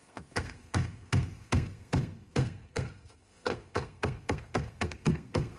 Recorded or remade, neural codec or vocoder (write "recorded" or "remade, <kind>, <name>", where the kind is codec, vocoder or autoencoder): remade, codec, SNAC